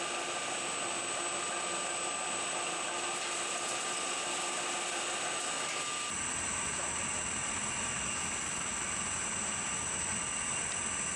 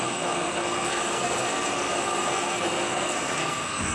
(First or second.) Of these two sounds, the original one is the first